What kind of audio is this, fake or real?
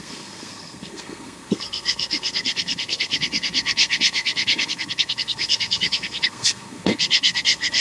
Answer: fake